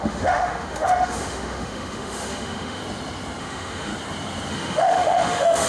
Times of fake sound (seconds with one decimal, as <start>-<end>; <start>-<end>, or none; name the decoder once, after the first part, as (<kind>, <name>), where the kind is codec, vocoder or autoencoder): 0.0-2.8 (autoencoder, DAC-VAE); 3.4-3.9; 4.5-5.7